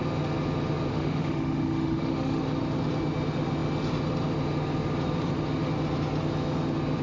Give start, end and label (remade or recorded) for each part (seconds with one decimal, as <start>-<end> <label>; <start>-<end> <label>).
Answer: 0.0-0.9 recorded; 0.9-2.4 remade; 2.4-7.0 recorded